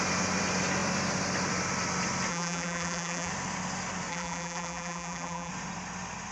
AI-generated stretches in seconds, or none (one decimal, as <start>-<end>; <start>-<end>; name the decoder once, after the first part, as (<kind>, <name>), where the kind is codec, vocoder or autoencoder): 2.3-3.3 (vocoder, BigVGAN v2); 4.1-5.5